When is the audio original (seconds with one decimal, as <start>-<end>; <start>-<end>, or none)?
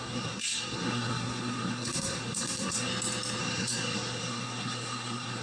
2.9-3.4